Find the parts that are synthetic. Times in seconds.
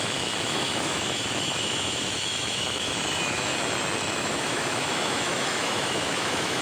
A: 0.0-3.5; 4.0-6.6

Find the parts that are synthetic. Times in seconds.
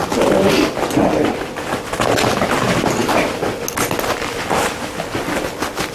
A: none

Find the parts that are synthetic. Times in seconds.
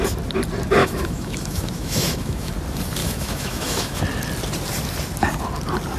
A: 0.8-2.5; 3.0-4.0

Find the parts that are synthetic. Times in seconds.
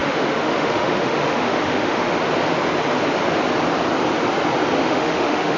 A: 0.0-2.1; 4.8-5.6